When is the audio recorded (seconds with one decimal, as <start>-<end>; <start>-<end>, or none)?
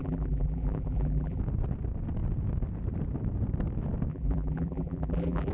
1.4-4.1